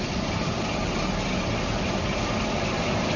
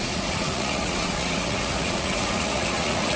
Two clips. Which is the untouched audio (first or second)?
first